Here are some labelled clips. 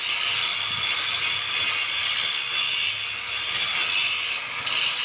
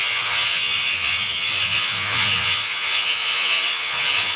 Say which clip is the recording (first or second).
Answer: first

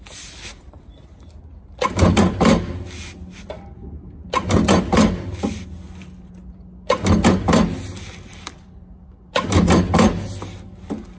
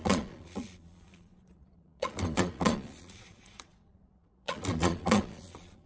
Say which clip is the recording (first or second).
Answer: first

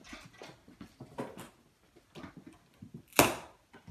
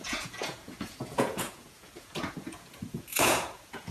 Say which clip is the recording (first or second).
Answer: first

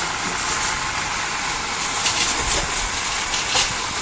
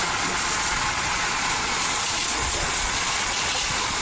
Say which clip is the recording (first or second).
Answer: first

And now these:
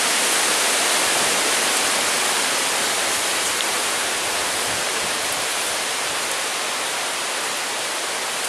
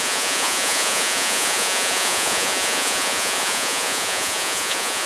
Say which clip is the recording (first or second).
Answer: first